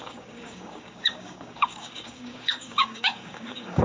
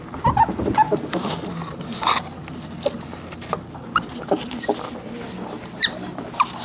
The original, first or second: second